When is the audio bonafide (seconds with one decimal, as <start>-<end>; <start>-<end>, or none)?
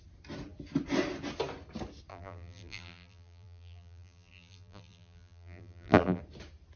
0.0-2.1; 6.2-6.8